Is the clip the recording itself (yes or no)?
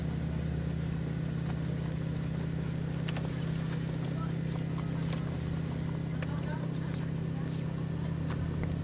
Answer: yes